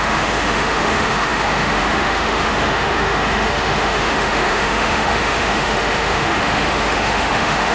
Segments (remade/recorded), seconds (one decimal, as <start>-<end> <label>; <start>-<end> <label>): 0.0-7.7 remade